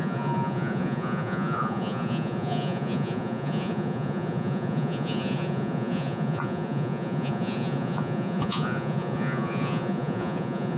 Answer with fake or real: fake